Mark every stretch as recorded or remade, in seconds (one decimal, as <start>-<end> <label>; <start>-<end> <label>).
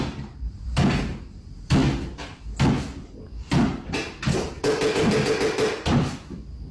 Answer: 0.0-6.7 recorded